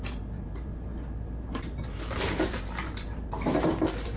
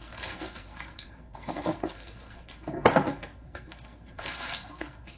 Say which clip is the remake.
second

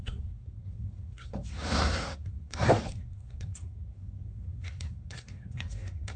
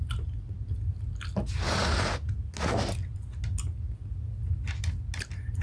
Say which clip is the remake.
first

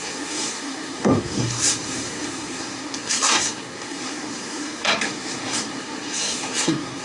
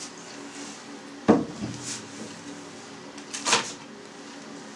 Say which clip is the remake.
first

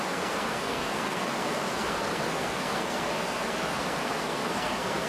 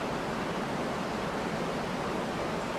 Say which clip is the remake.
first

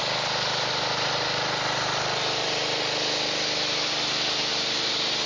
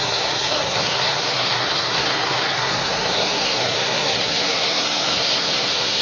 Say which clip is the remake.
second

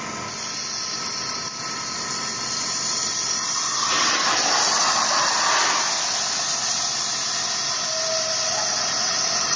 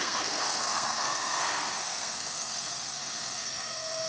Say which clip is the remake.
second